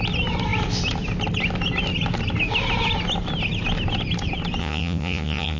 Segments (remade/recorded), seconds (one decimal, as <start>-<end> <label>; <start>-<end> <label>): 0.0-4.6 recorded; 4.6-5.6 remade